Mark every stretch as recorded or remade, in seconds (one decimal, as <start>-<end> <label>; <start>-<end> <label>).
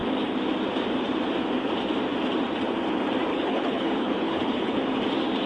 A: 0.0-3.3 recorded; 3.3-4.7 remade; 4.7-5.5 recorded